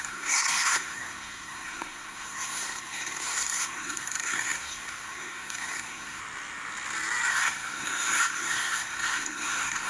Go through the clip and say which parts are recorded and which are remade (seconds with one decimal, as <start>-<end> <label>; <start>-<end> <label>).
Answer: 0.0-6.2 remade; 6.2-7.3 recorded; 7.3-9.9 remade